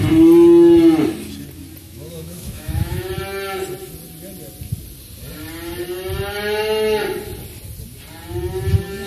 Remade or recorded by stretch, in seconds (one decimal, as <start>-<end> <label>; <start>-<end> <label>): 0.0-1.8 recorded; 1.8-3.1 remade; 3.1-9.1 recorded